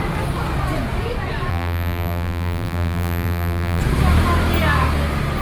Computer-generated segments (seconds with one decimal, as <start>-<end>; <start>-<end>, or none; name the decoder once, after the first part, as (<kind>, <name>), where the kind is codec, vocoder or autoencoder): 1.5-3.8 (vocoder, BigVGAN v2)